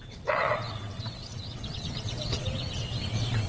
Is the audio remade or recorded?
remade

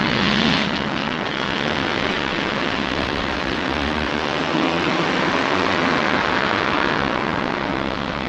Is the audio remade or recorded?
remade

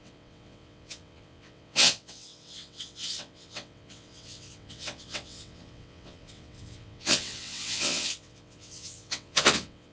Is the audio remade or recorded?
remade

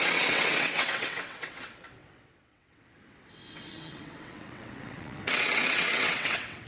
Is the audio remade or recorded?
remade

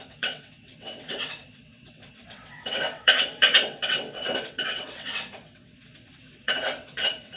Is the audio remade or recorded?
remade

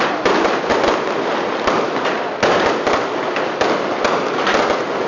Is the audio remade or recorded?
recorded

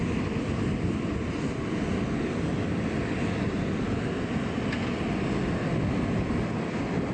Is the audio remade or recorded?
recorded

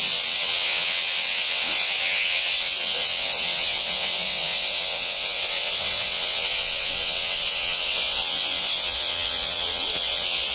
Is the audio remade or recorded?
remade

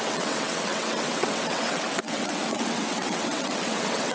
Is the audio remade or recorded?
remade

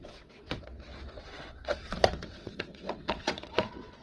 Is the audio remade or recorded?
remade